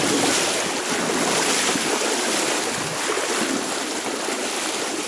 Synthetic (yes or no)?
no